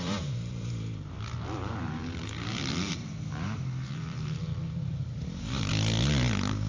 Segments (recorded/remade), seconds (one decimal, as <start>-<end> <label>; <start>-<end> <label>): 0.0-5.7 remade; 5.7-6.7 recorded